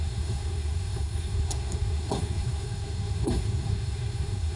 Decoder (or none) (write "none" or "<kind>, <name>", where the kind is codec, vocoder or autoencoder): codec, SNAC